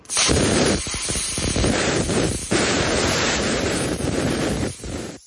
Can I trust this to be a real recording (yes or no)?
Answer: no